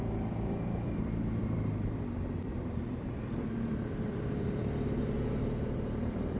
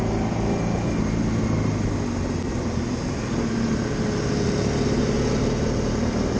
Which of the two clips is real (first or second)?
second